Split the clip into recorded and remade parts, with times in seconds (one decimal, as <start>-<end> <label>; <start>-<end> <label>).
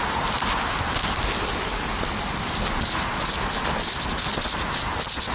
0.0-5.3 recorded